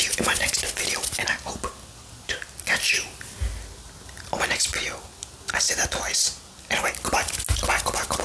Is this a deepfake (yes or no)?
no